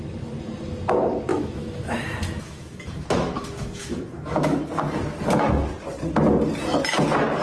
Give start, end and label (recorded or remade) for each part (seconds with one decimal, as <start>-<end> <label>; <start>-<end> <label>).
0.0-1.3 recorded; 1.3-4.7 remade; 4.7-7.4 recorded